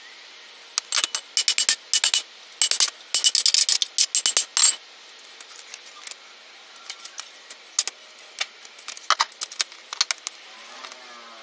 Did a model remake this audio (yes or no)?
no